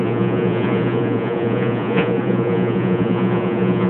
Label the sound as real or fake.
fake